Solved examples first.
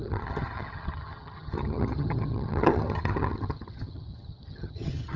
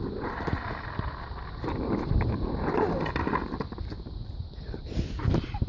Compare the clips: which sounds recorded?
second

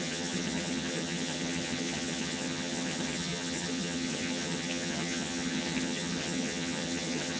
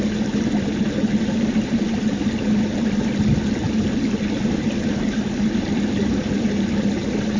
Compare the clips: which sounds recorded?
second